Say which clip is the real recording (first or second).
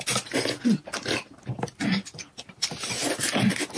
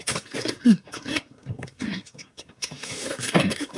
first